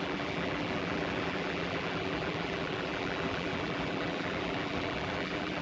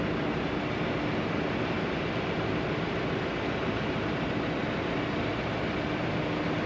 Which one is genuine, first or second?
second